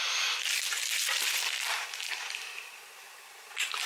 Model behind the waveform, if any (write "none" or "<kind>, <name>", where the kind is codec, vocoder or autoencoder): vocoder, BigVGAN v2